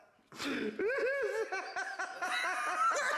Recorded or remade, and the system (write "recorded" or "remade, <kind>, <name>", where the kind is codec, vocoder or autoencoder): recorded